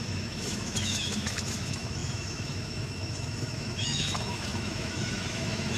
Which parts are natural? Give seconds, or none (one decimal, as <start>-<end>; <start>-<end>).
none